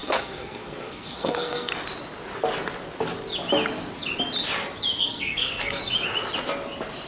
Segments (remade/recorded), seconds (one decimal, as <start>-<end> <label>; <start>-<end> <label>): 0.0-1.7 remade; 1.7-5.0 recorded; 5.0-5.8 remade; 5.8-7.1 recorded